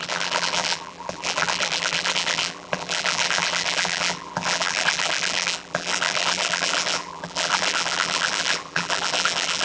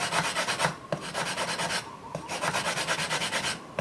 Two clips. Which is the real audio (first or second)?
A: second